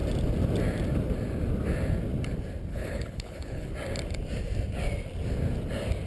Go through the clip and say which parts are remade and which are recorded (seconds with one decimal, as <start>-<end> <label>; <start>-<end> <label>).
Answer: 0.0-2.7 recorded; 2.7-3.7 remade; 3.7-6.1 recorded